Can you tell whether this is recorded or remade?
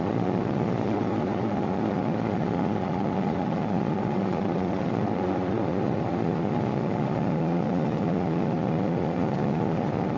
remade